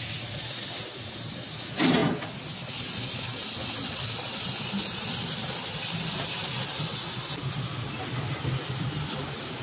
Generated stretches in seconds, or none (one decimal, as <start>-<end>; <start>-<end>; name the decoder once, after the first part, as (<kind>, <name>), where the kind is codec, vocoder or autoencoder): none